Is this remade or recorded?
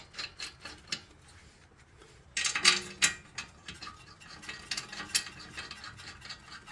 recorded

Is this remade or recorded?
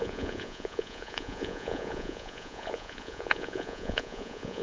remade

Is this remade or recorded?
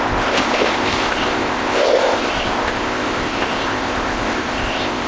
remade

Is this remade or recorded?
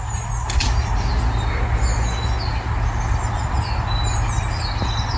recorded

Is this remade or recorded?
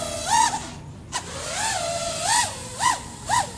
recorded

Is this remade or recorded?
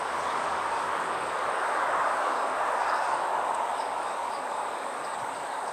remade